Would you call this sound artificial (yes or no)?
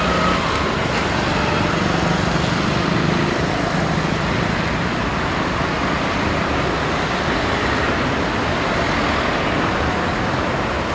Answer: no